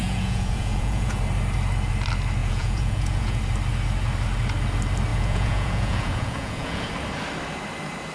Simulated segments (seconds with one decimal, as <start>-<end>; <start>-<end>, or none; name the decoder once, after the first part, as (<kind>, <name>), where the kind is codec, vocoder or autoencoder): 0.0-1.2 (vocoder, Vocos); 2.4-3.4; 5.1-6.9